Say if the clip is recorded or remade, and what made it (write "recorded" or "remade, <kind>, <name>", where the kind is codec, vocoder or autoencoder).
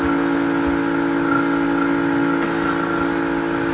recorded